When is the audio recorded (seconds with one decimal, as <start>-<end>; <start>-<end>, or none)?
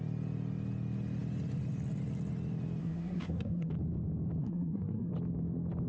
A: 0.0-2.8; 3.7-4.4; 5.1-5.9